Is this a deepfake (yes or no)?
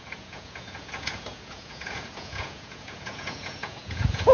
yes